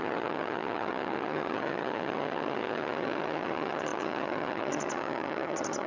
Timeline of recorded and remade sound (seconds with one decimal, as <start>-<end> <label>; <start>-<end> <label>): 0.0-5.9 remade